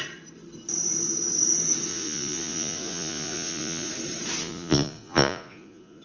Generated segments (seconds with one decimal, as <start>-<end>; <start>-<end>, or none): 1.9-3.9; 4.4-6.0